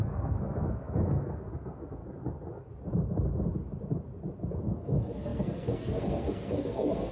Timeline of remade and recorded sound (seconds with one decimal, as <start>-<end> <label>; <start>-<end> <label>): 0.0-2.0 remade; 2.0-4.6 recorded; 4.6-7.1 remade